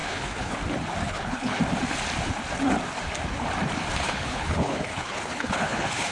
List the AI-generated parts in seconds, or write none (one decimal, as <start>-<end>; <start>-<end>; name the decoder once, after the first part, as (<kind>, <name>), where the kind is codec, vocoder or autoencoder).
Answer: 0.0-0.6 (codec, HILCodec); 1.0-1.6; 3.9-6.1